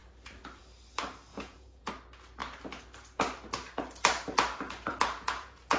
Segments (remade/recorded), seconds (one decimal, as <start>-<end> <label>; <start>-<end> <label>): 0.0-1.3 recorded; 1.3-1.9 remade; 1.9-4.9 recorded; 4.9-5.8 remade

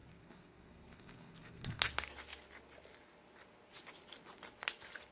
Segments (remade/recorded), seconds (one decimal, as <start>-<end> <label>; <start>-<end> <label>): 0.0-1.8 remade; 1.8-5.1 recorded

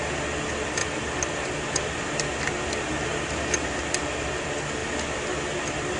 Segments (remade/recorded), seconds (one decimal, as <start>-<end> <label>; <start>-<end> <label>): 0.0-6.0 recorded

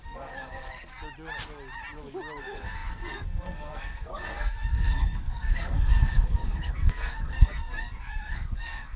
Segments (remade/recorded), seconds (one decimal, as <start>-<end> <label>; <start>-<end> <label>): 0.0-0.9 remade; 0.9-2.4 recorded; 2.4-9.0 remade

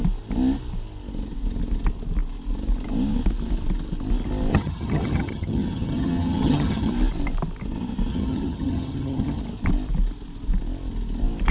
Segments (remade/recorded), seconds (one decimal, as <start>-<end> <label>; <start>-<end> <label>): 0.0-4.5 recorded; 4.5-6.9 remade; 6.9-8.1 recorded; 8.1-9.4 remade; 9.4-11.5 recorded

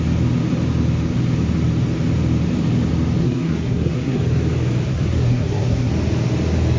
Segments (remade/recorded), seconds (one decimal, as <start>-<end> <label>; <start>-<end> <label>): 0.0-3.2 recorded; 3.2-4.2 remade; 4.2-4.9 recorded; 4.9-5.9 remade; 5.9-6.8 recorded